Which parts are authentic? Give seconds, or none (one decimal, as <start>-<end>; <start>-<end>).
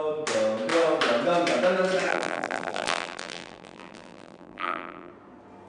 0.0-2.1; 5.1-5.7